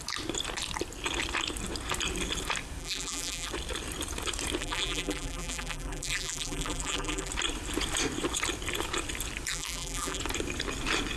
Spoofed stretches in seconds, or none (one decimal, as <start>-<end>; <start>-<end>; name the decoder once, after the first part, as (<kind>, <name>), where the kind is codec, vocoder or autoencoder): 2.8-3.5 (vocoder, BigVGAN v2); 4.6-7.3; 9.5-10.2